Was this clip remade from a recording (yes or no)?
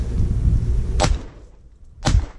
no